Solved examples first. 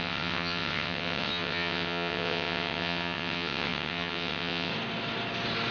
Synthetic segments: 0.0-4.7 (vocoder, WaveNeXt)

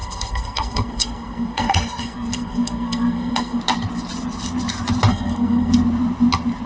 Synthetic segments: 0.0-3.6 (codec, SNAC); 5.1-5.7

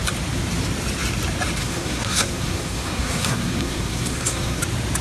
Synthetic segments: 1.6-4.6 (codec, SNAC)

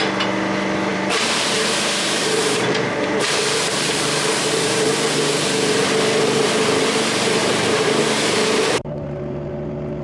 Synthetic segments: 0.9-4.9 (vocoder, BigVGAN v2); 7.4-9.5

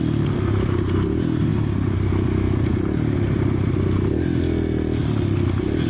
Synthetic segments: none

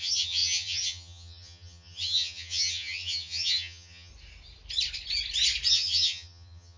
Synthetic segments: 0.0-4.1 (vocoder, HiFi-GAN); 5.7-6.8

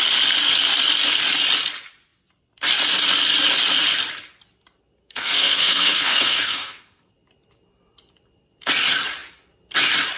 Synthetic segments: 5.0-7.1 (codec, SNAC)

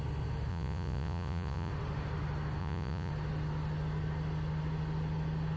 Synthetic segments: 0.5-1.7 (vocoder, Vocos); 2.6-3.1